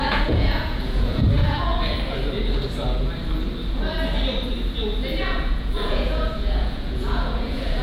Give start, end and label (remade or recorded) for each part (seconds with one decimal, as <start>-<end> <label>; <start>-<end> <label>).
0.0-1.7 remade; 1.7-5.2 recorded; 5.2-7.8 remade